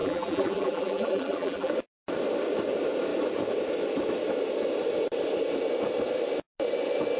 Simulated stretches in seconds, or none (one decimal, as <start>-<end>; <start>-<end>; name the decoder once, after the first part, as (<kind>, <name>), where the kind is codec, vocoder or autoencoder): 0.0-1.7 (vocoder, BigVGAN v2)